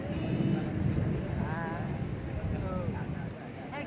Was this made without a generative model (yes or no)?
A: yes